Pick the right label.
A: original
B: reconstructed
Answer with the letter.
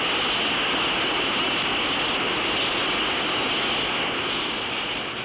A